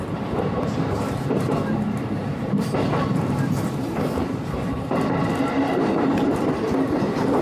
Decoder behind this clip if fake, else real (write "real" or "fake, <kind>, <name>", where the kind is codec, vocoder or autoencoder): fake, vocoder, BigVGAN v2